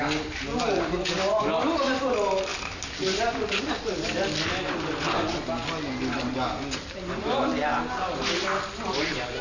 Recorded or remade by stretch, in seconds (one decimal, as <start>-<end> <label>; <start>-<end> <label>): 0.0-9.4 recorded

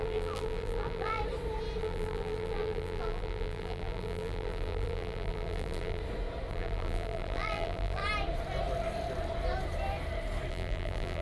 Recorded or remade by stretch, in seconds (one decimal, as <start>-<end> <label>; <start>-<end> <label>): 0.0-1.2 remade; 1.2-1.8 recorded; 1.8-6.0 remade; 6.0-6.5 recorded; 6.5-8.0 remade; 8.0-10.5 recorded; 10.5-11.2 remade

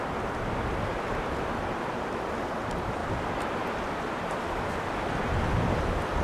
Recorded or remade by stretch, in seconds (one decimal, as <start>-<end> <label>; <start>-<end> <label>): 0.0-6.2 recorded